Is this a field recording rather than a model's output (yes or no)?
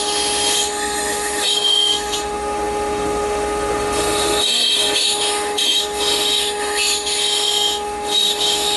no